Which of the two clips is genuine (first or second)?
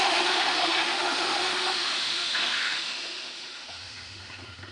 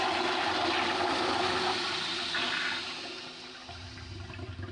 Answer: second